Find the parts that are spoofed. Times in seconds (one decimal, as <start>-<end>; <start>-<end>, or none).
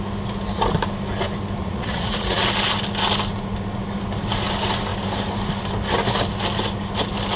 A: 1.6-2.4